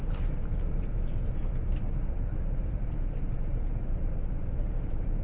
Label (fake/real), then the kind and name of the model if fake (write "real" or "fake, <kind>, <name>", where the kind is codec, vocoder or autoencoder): fake, vocoder, BigVGAN v2